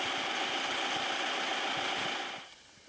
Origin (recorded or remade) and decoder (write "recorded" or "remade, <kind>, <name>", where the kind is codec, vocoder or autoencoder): recorded